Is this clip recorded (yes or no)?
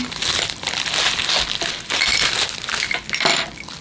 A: yes